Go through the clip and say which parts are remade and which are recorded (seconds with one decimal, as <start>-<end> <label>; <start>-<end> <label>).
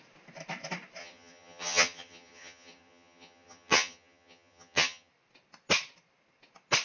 0.0-1.0 recorded; 1.0-5.1 remade; 5.1-6.8 recorded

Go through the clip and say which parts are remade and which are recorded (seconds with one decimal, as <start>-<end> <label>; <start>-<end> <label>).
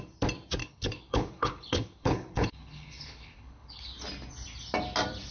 0.0-0.6 recorded; 0.6-3.8 remade; 3.8-5.3 recorded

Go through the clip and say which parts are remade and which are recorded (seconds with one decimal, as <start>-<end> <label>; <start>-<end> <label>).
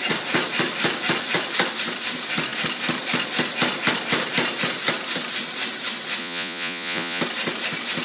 0.0-6.2 recorded; 6.2-7.2 remade; 7.2-8.0 recorded